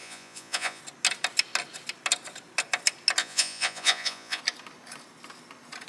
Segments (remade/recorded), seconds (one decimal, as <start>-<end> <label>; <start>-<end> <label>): 0.0-0.8 remade; 0.8-3.2 recorded; 3.2-4.4 remade; 4.4-5.9 recorded